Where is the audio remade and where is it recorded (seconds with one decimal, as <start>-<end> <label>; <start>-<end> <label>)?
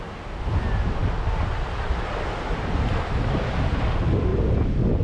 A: 0.0-5.0 recorded